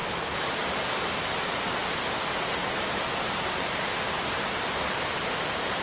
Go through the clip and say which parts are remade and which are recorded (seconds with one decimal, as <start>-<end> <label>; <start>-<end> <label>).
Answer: 0.0-1.8 remade; 1.8-5.3 recorded; 5.3-5.8 remade